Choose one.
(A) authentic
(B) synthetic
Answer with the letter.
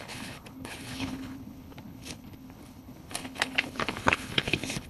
B